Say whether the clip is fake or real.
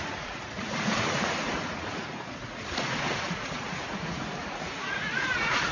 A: fake